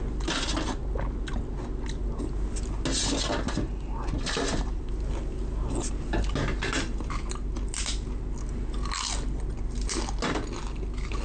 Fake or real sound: real